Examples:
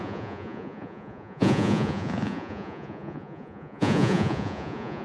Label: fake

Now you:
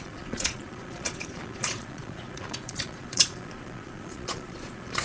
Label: fake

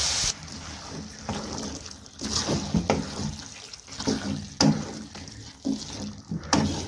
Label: real